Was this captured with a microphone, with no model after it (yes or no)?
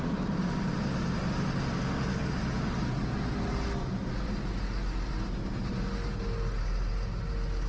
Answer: yes